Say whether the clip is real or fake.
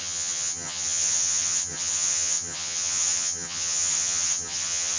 fake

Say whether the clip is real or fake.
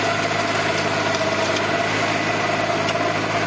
real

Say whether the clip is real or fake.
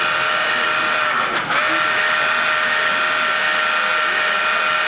real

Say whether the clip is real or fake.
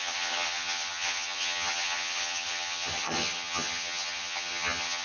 fake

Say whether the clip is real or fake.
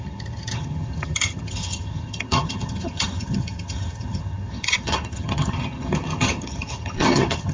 fake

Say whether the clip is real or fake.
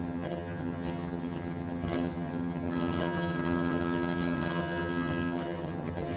fake